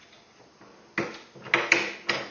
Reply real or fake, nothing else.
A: real